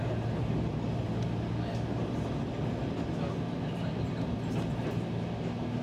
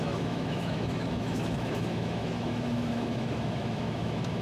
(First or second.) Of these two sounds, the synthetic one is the second